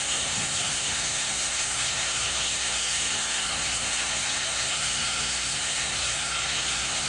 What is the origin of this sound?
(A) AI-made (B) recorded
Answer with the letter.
A